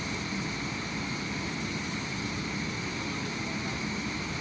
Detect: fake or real real